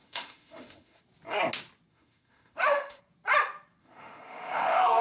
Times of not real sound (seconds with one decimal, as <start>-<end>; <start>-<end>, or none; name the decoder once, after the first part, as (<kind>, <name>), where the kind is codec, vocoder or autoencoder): 0.0-1.0 (autoencoder, DAC-VAE); 1.9-3.0; 3.8-5.0